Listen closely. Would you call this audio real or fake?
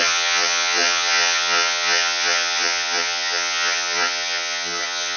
fake